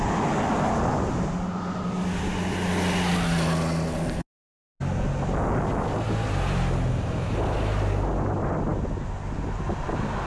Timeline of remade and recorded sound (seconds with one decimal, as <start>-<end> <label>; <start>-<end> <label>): 0.0-10.3 recorded